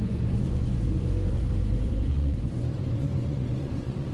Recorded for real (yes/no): no